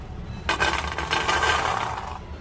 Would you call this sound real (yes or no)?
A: yes